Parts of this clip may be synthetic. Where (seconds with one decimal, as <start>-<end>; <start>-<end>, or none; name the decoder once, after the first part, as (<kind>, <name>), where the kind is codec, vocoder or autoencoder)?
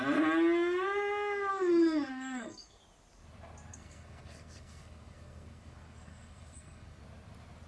1.5-2.8 (codec, SNAC); 3.7-7.0